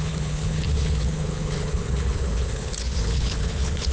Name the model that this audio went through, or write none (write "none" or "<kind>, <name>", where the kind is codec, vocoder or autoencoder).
codec, HILCodec